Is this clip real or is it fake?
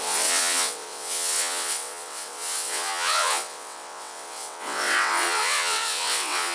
fake